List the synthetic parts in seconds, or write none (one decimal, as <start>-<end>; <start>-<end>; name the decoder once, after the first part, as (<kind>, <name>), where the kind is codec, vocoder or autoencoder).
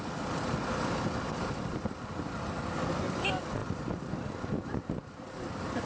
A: none